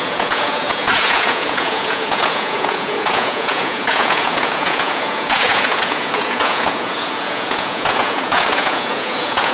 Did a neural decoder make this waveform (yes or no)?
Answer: yes